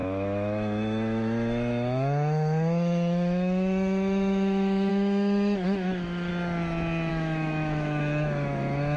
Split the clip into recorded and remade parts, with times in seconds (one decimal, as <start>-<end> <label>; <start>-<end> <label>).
0.0-6.3 remade; 6.3-7.1 recorded; 7.1-9.0 remade